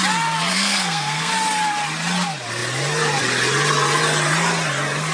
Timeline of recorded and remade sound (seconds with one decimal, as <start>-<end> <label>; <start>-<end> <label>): 0.0-0.5 recorded; 0.5-1.3 remade; 1.3-5.1 recorded